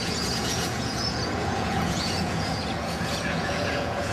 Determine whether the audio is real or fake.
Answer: fake